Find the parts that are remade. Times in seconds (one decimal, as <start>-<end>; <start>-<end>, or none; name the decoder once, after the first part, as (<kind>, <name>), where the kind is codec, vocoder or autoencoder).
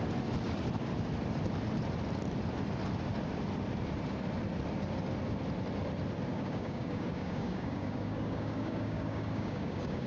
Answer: 6.3-10.1 (codec, DAC)